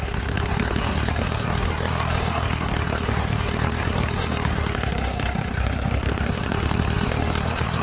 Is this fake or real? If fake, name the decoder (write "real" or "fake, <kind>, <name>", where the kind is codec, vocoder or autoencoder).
fake, codec, SNAC